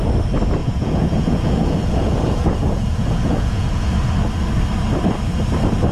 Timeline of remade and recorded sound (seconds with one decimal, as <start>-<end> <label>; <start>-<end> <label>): 0.0-0.6 recorded; 0.6-4.1 remade; 4.1-5.9 recorded